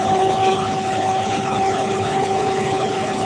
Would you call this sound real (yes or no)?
no